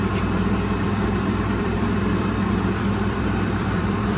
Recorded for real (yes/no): no